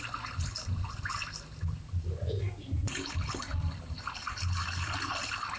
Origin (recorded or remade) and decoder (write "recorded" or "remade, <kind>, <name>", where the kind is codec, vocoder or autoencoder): recorded